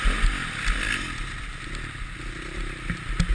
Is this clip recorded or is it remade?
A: recorded